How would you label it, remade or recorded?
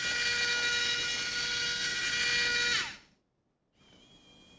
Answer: recorded